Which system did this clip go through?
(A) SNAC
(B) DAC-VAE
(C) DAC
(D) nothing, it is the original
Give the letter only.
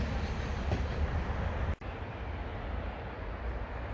D